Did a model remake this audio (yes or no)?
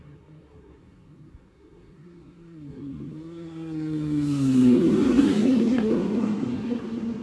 yes